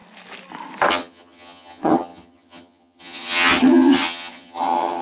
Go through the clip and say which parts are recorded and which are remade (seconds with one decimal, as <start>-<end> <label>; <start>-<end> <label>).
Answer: 0.0-0.9 recorded; 0.9-5.0 remade